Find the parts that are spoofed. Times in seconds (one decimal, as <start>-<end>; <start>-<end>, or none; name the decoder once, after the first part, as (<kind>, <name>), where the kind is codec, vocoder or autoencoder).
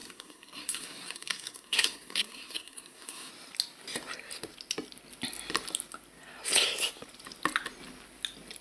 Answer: 0.0-3.3 (codec, SNAC)